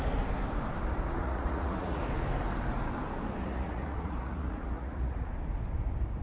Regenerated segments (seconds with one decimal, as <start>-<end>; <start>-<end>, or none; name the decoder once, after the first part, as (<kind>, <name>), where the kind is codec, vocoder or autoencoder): 1.2-2.0 (vocoder, Vocos); 3.4-5.3